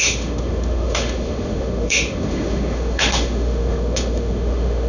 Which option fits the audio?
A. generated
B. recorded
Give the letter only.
A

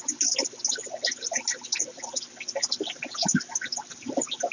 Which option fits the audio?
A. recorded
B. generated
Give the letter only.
A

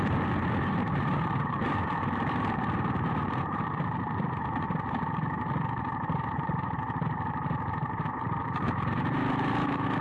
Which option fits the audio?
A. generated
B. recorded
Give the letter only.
A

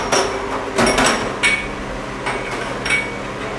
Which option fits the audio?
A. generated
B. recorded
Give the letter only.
B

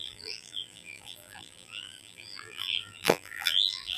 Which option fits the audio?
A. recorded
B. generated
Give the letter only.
B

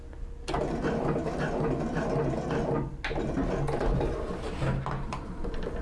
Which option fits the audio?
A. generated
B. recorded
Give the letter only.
B